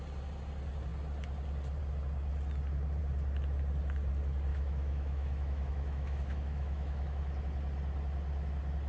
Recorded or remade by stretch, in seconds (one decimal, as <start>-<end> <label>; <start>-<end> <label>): 0.0-4.5 recorded; 4.5-7.2 remade; 7.2-8.9 recorded